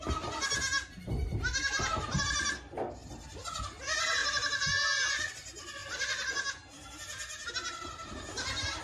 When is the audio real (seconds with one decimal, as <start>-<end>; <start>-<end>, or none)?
0.0-8.8